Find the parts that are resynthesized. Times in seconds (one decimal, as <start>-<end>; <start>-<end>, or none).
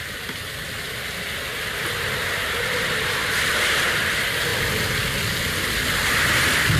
none